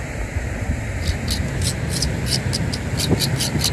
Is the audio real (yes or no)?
yes